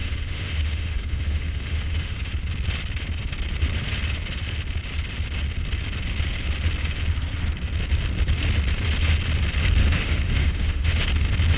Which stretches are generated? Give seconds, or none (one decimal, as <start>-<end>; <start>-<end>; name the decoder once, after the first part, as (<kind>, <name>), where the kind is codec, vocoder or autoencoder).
0.0-2.3 (autoencoder, DAC-VAE); 9.8-11.0